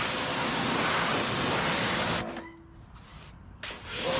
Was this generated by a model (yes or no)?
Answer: no